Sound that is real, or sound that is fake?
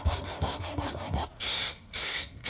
fake